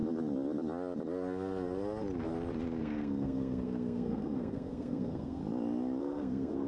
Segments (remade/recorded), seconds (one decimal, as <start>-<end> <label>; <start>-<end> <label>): 0.0-2.8 recorded; 2.8-5.4 remade; 5.4-6.0 recorded; 6.0-6.7 remade